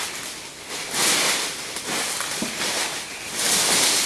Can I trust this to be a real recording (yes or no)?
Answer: yes